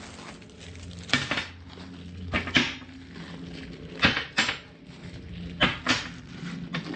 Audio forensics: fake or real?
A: real